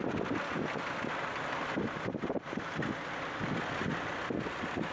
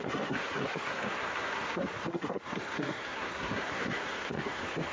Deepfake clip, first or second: second